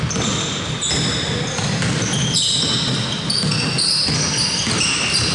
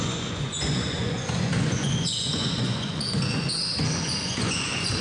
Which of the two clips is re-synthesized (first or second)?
second